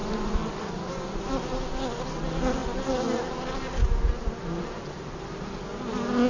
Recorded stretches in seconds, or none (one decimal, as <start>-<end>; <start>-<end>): 0.0-6.3